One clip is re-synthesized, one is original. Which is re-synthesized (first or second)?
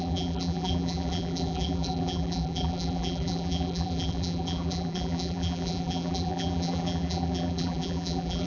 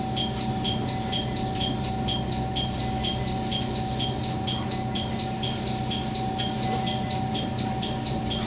first